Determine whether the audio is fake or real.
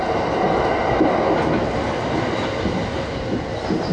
real